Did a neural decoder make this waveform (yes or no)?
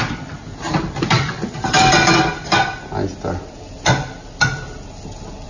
no